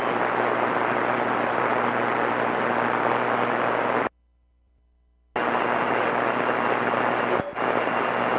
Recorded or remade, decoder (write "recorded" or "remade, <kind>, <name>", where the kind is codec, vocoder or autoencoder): recorded